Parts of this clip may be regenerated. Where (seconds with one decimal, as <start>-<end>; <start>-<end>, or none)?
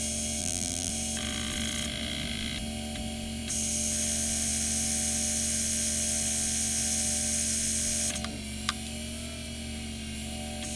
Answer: 0.4-0.9